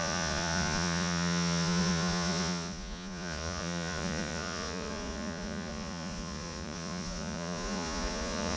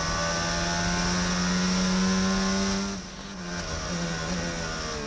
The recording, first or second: second